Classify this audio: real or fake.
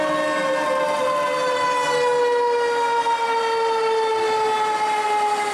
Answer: real